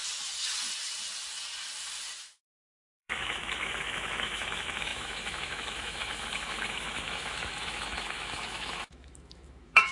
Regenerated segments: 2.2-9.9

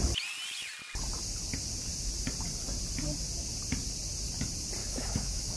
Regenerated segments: 4.8-5.6

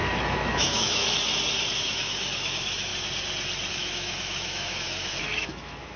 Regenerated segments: 0.0-1.0; 1.8-2.9; 3.7-6.0

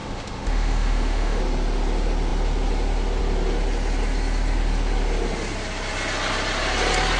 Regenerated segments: 0.0-1.4

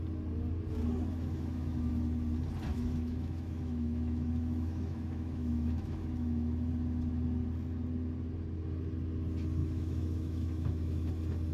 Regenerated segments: 1.1-1.9; 2.7-6.7; 9.6-11.1

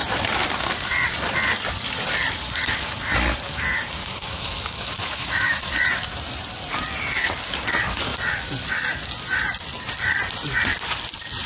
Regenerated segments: 4.0-5.7

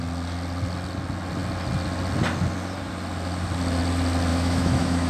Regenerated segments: 4.3-5.1

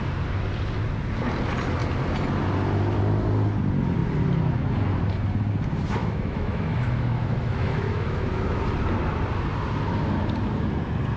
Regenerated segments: 6.0-8.6